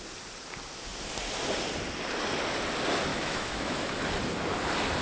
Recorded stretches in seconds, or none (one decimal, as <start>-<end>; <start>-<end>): 0.0-3.1; 4.0-5.0